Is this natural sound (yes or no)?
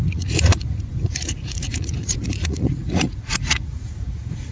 no